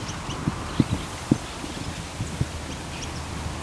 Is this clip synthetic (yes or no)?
no